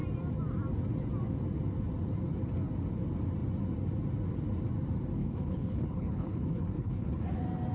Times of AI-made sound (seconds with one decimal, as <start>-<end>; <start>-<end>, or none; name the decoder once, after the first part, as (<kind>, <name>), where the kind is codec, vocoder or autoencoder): 5.2-7.2 (codec, HILCodec)